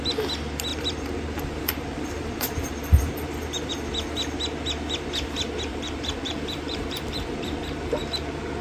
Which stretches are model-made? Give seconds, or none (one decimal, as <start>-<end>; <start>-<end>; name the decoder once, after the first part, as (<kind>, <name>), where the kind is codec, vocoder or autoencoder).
0.7-3.7 (vocoder, BigVGAN v2); 5.7-7.9